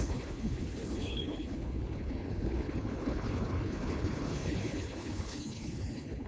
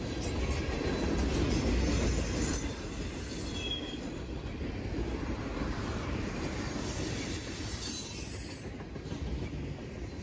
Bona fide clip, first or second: second